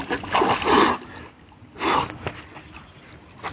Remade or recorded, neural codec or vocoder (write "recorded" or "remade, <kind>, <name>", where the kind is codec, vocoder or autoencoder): recorded